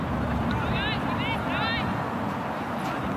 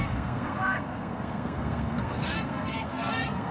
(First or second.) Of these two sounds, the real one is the first